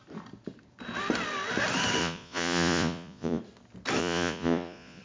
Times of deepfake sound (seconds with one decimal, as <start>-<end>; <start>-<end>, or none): 2.0-3.4; 4.0-5.0